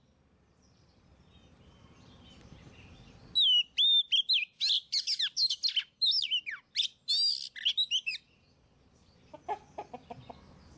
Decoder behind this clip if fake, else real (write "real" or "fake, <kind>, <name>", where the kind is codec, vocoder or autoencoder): real